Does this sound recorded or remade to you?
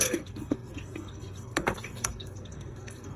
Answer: remade